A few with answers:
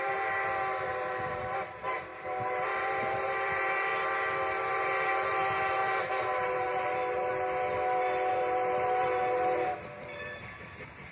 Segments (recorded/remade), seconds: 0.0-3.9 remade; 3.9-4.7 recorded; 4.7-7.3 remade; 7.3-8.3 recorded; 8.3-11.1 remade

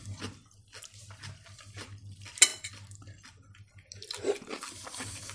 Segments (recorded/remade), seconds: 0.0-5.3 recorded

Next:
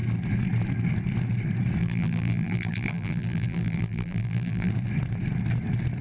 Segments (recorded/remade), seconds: 0.0-1.8 recorded; 1.8-4.7 remade; 4.7-6.0 recorded

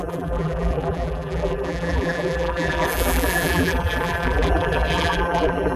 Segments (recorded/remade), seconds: 0.0-5.8 remade

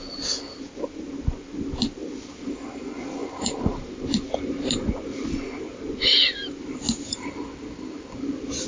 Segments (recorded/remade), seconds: 0.0-2.0 recorded; 2.0-2.8 remade; 2.8-3.2 recorded; 3.2-8.1 remade; 8.1-8.7 recorded

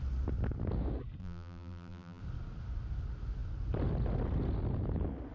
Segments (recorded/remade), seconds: 0.0-1.2 recorded; 1.2-2.2 remade; 2.2-5.3 recorded

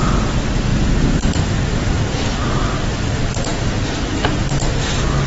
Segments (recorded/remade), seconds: 0.0-5.3 recorded